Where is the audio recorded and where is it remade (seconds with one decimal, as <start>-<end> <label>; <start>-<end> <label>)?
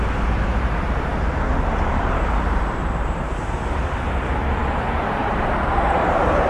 0.0-6.5 remade